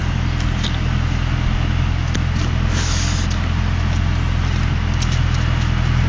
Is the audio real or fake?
real